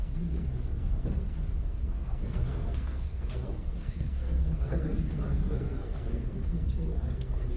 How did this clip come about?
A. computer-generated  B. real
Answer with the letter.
A